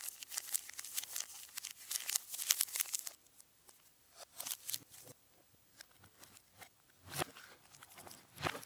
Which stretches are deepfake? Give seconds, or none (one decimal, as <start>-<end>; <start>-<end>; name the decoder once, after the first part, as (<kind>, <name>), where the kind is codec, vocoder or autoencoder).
3.9-6.9 (vocoder, BigVGAN v2)